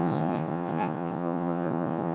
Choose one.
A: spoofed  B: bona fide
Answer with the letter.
A